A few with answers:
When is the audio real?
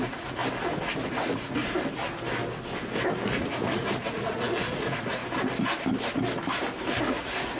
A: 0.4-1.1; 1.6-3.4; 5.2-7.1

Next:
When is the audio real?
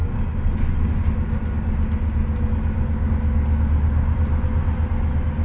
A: 0.0-5.4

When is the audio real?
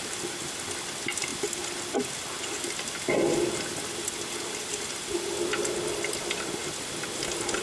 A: 0.0-7.6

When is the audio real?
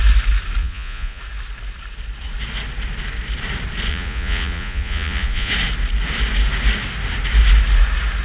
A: 0.0-0.6; 1.2-3.9; 5.5-8.2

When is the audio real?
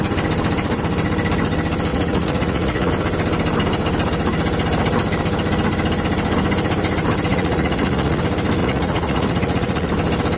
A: 0.0-1.9; 2.9-7.3; 8.2-8.6; 9.9-10.4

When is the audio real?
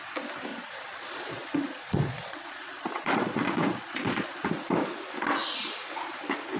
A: 0.0-0.5; 4.5-6.6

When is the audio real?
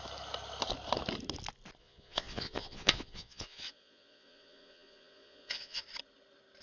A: 0.0-1.8; 5.8-6.6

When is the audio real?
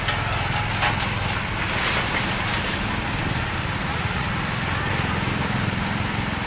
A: 0.0-3.8; 4.3-6.5